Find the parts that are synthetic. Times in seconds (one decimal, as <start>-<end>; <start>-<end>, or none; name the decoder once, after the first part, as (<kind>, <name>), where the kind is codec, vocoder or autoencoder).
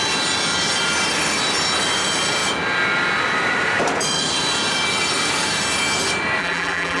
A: 6.4-7.0 (vocoder, BigVGAN v2)